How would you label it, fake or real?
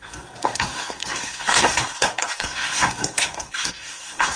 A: fake